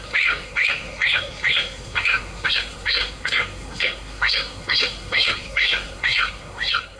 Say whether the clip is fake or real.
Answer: fake